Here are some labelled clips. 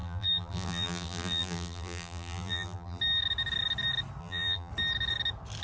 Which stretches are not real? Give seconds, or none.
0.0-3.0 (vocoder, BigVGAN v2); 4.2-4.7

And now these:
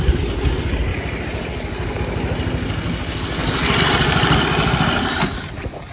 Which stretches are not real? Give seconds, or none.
0.9-2.0 (vocoder, BigVGAN v2); 3.4-4.4

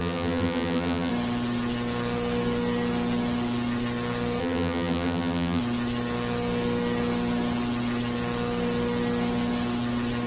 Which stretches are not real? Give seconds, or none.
0.0-1.1 (vocoder, BigVGAN v2); 4.4-5.6

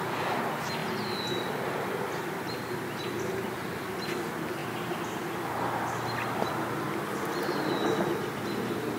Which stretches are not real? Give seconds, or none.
0.8-3.5 (vocoder, BigVGAN v2); 7.8-9.0

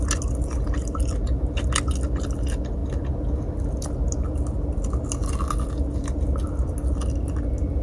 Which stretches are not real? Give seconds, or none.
none

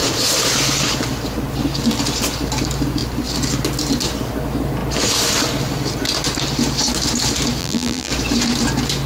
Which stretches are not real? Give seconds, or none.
7.6-8.1 (vocoder, BigVGAN v2)